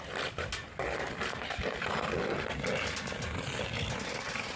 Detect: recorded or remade recorded